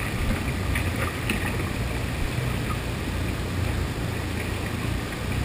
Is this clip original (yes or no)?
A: yes